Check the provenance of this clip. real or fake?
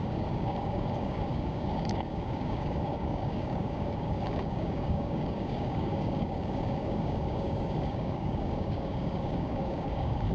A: fake